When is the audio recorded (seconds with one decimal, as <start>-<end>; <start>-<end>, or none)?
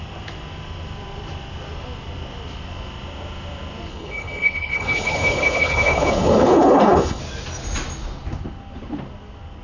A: 0.0-3.9; 7.2-9.6